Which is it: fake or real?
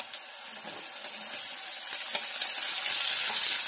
real